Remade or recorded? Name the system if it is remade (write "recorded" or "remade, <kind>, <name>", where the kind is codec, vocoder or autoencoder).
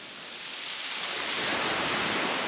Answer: recorded